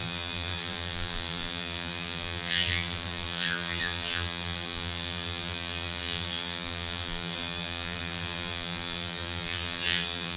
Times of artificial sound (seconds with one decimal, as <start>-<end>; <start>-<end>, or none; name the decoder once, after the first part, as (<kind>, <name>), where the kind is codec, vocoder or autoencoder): 0.0-10.4 (vocoder, BigVGAN v2)